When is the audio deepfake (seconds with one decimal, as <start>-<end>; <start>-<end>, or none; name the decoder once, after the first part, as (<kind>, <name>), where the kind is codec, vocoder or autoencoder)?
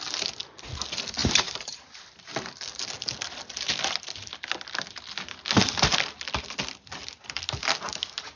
1.2-2.3 (vocoder, BigVGAN v2)